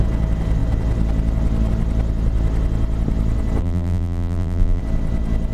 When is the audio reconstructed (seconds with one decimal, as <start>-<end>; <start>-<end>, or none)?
3.6-4.8